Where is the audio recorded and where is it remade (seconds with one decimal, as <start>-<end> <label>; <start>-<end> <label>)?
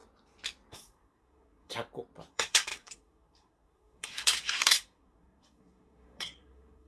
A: 0.0-0.7 recorded; 0.7-1.7 remade; 1.7-2.3 recorded; 2.3-6.9 remade